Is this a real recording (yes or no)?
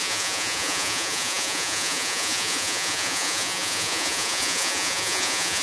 no